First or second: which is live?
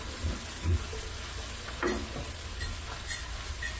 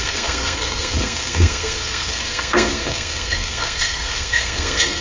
first